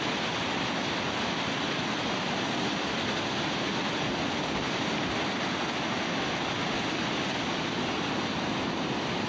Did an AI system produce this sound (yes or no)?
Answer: no